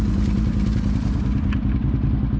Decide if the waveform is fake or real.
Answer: real